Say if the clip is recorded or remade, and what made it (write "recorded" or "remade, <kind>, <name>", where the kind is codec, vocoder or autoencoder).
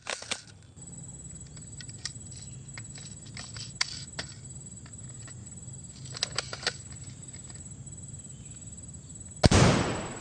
recorded